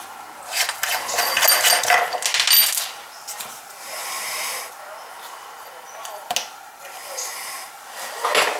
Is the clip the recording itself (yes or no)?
yes